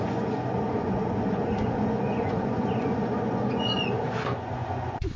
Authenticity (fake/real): fake